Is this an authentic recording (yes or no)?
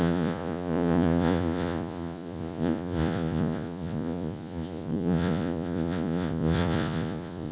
no